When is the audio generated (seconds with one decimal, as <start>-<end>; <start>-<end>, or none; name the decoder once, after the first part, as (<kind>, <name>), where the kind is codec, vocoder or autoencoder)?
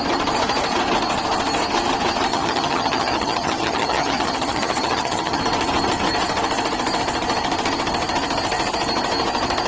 2.3-5.4 (vocoder, HiFi-GAN)